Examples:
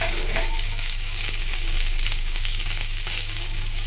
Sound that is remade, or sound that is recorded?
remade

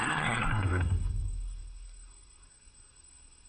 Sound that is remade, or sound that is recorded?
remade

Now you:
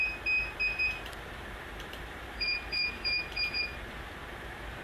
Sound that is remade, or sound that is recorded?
remade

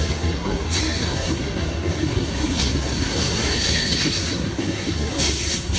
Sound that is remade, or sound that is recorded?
remade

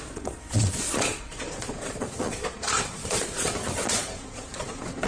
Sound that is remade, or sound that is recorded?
remade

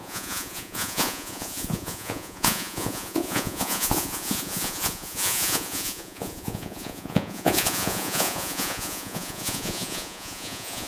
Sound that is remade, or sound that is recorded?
remade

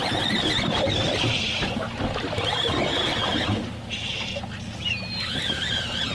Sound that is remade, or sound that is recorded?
remade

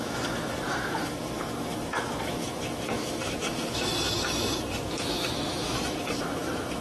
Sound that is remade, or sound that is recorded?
remade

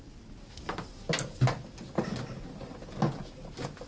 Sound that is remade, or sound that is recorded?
recorded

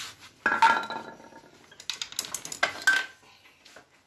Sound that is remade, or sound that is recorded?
recorded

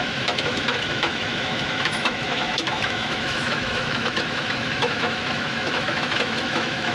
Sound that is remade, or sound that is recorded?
remade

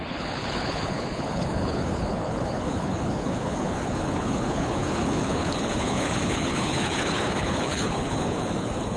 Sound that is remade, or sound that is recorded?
remade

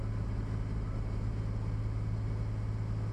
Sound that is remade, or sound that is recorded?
recorded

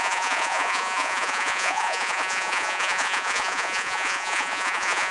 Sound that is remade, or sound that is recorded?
remade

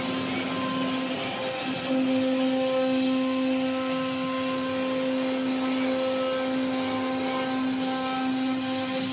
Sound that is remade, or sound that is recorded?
recorded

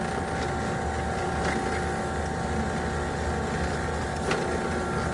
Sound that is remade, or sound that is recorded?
recorded